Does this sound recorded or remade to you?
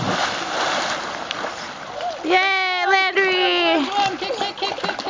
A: recorded